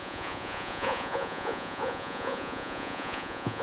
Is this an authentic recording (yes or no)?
no